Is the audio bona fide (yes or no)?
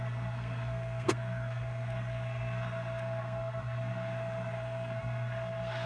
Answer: no